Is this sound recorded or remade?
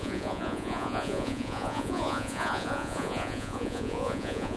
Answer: remade